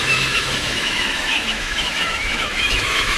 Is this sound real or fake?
fake